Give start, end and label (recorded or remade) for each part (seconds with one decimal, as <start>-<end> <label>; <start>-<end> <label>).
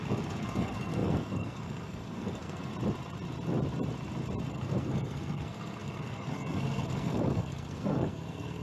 0.0-2.7 remade; 2.7-4.5 recorded; 4.5-8.6 remade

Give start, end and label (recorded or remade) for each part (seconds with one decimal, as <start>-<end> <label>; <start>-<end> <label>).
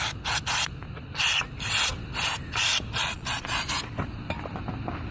0.0-3.0 recorded; 3.0-3.8 remade; 3.8-5.1 recorded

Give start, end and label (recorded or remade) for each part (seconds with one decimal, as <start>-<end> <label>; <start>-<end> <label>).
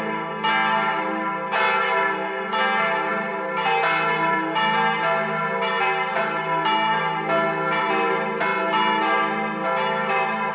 0.0-10.5 recorded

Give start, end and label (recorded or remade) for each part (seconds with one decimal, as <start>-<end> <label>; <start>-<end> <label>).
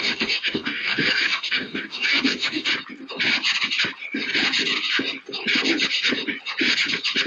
0.0-2.7 remade; 2.7-7.3 recorded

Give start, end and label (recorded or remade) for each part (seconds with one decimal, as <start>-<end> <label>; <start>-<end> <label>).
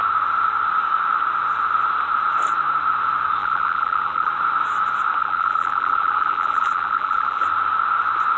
0.0-3.4 recorded; 3.4-4.3 remade; 4.3-5.2 recorded; 5.2-7.4 remade; 7.4-8.4 recorded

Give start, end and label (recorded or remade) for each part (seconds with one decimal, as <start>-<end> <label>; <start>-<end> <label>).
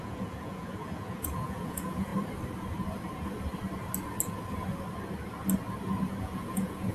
0.0-2.1 remade; 2.1-6.2 recorded; 6.2-6.9 remade